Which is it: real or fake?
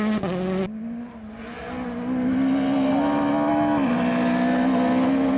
real